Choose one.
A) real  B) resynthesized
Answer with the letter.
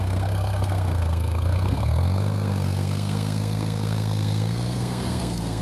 B